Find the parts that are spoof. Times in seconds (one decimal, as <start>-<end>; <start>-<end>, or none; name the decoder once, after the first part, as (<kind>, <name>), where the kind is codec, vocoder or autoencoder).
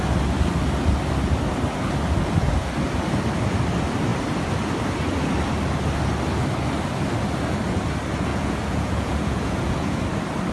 8.3-10.0 (vocoder, Vocos)